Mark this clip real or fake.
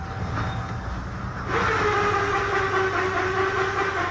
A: real